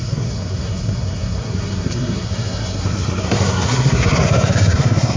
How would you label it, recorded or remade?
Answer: remade